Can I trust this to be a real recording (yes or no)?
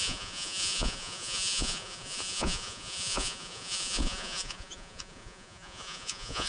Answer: no